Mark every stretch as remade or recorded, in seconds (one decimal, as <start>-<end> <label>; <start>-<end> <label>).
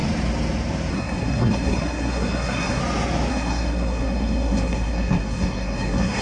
0.0-0.9 recorded; 0.9-2.8 remade; 2.8-3.3 recorded; 3.3-6.2 remade